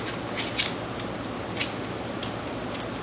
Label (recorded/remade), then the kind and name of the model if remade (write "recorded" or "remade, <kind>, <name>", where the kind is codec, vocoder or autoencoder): recorded